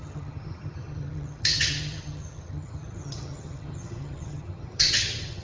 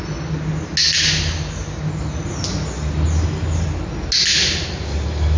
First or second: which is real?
second